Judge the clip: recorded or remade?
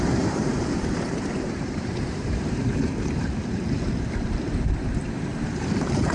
remade